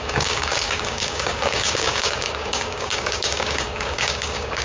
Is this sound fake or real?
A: fake